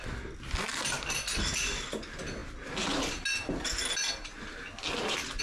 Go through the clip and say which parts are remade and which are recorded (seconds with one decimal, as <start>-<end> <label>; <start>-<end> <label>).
0.0-5.4 recorded

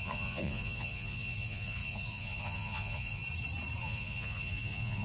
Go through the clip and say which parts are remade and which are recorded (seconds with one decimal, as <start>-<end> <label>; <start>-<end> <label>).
0.0-3.2 remade; 3.2-3.8 recorded; 3.8-5.0 remade